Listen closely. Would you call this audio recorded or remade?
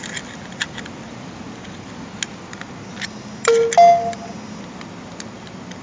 recorded